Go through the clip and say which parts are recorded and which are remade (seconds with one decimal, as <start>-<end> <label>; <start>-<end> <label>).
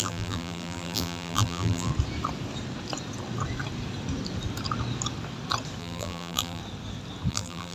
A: 0.0-1.9 remade; 1.9-5.8 recorded; 5.8-6.6 remade; 6.6-7.3 recorded; 7.3-7.7 remade